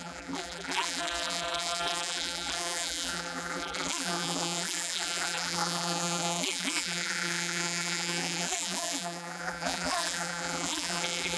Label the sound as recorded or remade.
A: remade